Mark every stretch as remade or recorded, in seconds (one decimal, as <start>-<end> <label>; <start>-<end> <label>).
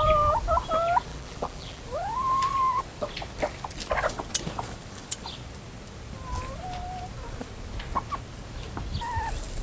0.0-1.1 recorded; 1.1-1.8 remade; 1.8-9.6 recorded